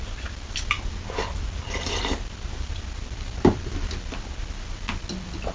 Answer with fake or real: fake